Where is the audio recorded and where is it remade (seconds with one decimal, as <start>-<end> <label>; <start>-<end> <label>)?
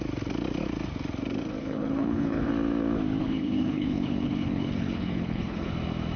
0.0-1.6 recorded; 1.6-2.5 remade; 2.5-3.2 recorded; 3.2-5.7 remade; 5.7-6.2 recorded